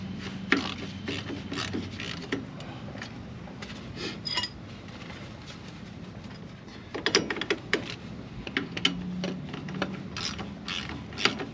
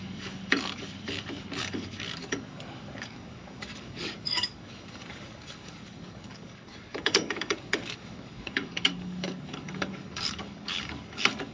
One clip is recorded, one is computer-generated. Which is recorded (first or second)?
first